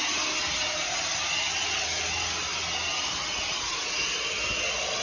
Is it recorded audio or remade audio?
recorded